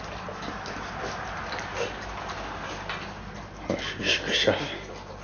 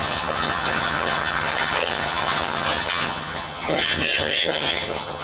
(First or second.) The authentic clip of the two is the first